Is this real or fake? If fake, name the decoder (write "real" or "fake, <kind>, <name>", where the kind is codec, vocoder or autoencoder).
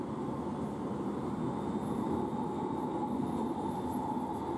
real